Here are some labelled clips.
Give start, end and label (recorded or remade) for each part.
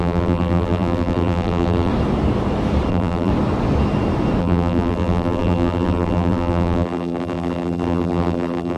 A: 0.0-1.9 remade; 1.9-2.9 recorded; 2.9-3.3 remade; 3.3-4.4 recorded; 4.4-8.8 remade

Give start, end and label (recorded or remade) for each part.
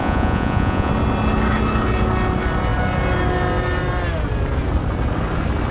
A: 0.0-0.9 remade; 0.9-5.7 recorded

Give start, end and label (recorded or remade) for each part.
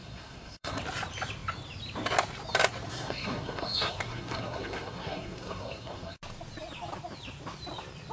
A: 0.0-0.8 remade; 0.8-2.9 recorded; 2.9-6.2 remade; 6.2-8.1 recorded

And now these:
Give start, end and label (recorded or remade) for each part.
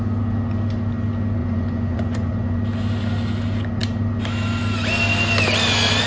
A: 0.0-1.4 recorded; 1.4-2.6 remade; 2.6-6.1 recorded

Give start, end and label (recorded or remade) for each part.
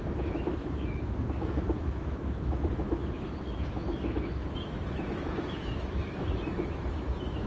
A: 0.0-7.5 remade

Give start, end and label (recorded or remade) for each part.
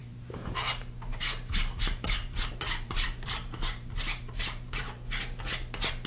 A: 0.0-0.7 remade; 0.7-1.1 recorded; 1.1-4.8 remade; 4.8-6.1 recorded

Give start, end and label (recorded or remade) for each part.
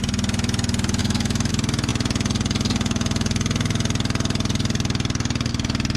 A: 0.0-1.0 recorded; 1.0-1.5 remade; 1.5-6.0 recorded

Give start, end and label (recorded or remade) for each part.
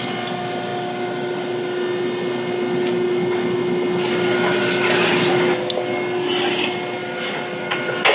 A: 0.0-8.1 recorded